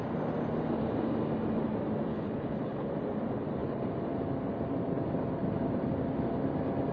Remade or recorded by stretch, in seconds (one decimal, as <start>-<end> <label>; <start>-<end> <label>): 0.0-2.1 recorded; 2.1-2.9 remade; 2.9-6.9 recorded